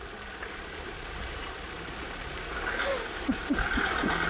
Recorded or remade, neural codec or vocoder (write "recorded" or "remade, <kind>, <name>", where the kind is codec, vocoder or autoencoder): recorded